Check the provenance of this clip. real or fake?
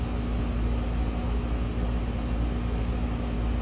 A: real